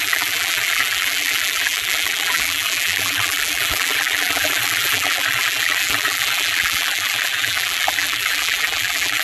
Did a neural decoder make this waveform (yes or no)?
yes